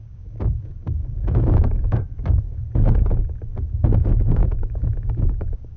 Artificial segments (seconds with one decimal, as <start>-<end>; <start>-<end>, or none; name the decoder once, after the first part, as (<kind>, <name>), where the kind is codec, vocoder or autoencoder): 0.0-2.6 (codec, DAC); 3.6-5.8